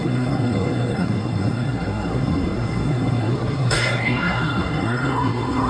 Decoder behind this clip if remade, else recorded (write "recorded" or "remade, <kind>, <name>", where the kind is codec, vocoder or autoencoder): remade, codec, SNAC